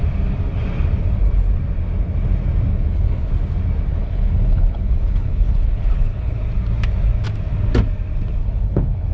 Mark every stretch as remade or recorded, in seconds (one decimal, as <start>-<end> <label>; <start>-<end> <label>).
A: 0.0-2.7 recorded; 2.7-3.3 remade; 3.3-3.9 recorded; 3.9-6.4 remade; 6.4-8.4 recorded; 8.4-9.1 remade